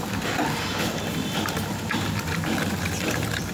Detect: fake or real fake